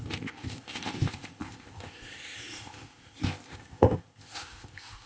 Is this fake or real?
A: fake